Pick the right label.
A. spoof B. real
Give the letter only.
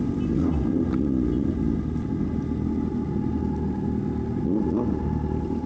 B